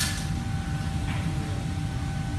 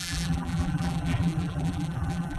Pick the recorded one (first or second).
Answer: first